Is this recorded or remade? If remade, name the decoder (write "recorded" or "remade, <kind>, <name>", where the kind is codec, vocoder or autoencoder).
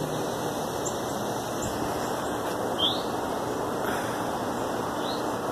recorded